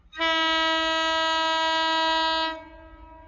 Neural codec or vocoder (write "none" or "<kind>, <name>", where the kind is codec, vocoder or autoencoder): none